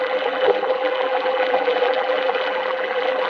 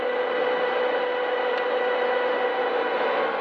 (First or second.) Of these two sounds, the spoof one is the first